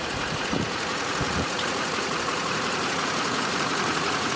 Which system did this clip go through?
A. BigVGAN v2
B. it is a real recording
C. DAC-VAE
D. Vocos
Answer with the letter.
D